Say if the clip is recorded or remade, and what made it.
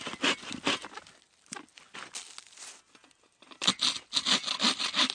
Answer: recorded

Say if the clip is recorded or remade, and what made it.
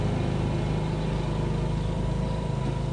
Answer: recorded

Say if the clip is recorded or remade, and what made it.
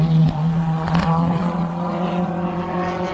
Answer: remade, vocoder, Vocos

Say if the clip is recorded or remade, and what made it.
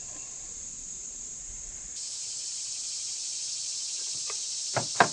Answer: remade, vocoder, BigVGAN v2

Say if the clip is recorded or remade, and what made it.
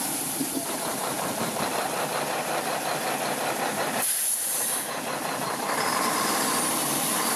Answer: remade, vocoder, BigVGAN v2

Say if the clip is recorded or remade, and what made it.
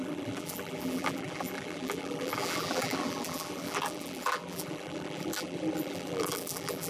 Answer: remade, vocoder, BigVGAN v2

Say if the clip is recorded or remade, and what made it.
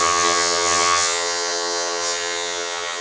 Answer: remade, vocoder, HiFi-GAN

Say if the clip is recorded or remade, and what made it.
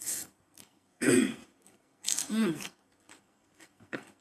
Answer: remade, codec, SNAC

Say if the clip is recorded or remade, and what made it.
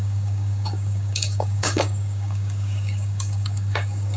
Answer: remade, codec, DAC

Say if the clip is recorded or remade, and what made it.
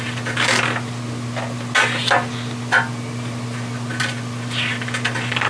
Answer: recorded